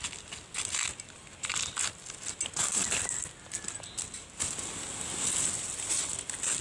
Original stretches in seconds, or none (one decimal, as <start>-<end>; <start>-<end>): 0.0-6.6